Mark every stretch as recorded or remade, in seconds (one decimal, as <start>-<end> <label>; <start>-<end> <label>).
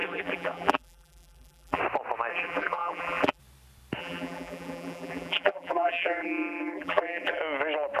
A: 0.0-1.8 remade; 1.8-2.3 recorded; 2.3-3.4 remade; 3.4-4.0 recorded; 4.0-7.4 remade; 7.4-8.0 recorded